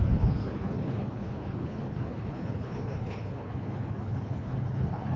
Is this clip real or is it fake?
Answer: fake